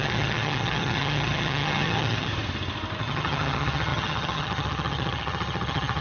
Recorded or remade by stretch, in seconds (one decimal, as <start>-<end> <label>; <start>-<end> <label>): 0.0-2.3 remade; 2.3-3.0 recorded; 3.0-6.0 remade